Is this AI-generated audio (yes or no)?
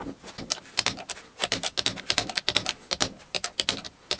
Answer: no